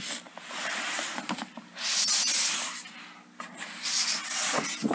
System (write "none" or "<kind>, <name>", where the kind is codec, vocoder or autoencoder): none